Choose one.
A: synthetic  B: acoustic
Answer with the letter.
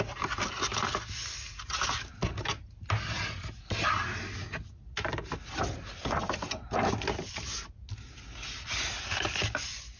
B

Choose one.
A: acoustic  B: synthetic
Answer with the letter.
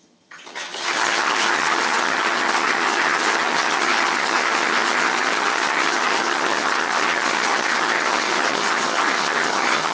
B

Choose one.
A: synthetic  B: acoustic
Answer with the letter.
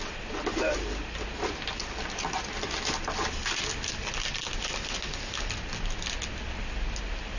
B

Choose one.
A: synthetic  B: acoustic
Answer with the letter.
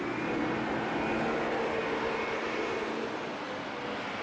B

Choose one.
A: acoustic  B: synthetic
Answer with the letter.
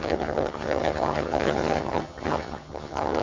B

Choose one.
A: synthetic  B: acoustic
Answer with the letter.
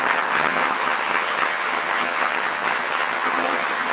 A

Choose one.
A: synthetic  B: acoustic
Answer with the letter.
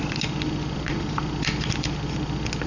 B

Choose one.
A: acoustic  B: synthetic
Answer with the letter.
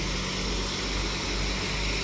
A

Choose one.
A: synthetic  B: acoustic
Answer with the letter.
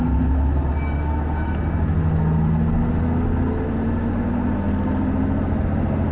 B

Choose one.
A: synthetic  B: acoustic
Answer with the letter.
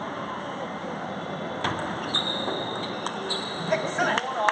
B